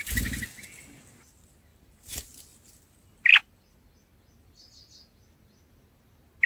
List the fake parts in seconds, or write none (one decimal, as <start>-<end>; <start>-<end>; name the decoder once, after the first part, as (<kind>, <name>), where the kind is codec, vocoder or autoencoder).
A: 1.7-2.4 (vocoder, BigVGAN v2)